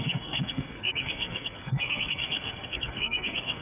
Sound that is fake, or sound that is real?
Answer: fake